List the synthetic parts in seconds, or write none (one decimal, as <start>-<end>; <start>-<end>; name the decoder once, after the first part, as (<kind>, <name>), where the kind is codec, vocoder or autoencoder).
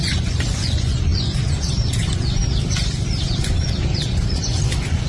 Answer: 0.0-2.4 (vocoder, Vocos); 3.2-5.1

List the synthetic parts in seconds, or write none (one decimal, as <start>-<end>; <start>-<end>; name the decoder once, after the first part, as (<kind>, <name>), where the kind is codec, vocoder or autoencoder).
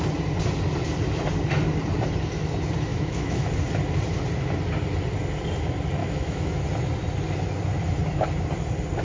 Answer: 2.9-3.5 (autoencoder, DAC-VAE); 6.0-6.6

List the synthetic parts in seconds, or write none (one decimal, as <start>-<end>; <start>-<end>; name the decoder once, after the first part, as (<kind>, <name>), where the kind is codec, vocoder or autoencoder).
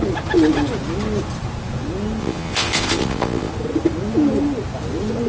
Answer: 2.2-3.5 (vocoder, Vocos)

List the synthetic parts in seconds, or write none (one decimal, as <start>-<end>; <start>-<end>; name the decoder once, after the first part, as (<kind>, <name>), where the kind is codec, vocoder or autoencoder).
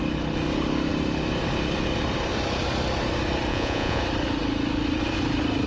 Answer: 3.5-4.0 (vocoder, Vocos)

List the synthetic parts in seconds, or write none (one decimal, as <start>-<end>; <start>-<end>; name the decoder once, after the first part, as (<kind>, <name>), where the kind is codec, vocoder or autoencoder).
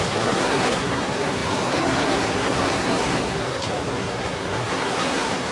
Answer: 0.0-5.5 (codec, SNAC)